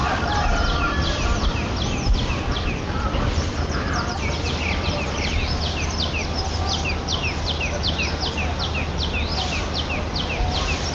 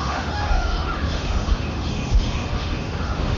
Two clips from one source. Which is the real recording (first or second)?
first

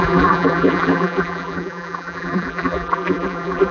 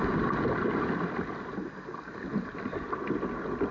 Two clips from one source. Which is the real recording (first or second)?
second